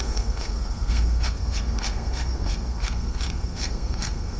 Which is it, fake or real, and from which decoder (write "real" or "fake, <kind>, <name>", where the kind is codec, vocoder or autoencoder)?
fake, codec, SNAC